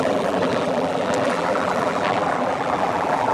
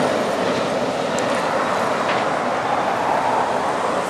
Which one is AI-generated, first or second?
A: first